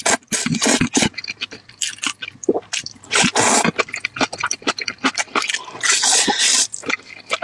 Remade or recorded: recorded